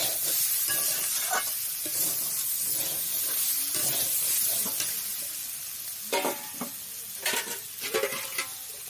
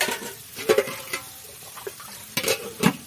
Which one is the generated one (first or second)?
second